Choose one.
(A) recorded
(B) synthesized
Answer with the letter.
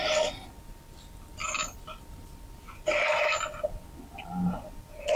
A